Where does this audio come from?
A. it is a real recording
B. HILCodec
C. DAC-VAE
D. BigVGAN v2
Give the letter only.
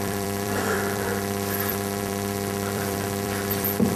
D